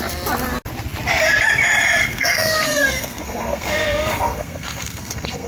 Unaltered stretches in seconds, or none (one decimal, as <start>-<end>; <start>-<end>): 0.0-2.0